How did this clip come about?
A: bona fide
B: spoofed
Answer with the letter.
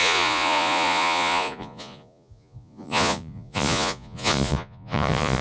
B